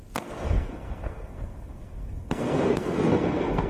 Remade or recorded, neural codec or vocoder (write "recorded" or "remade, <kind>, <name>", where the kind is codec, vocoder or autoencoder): remade, codec, SNAC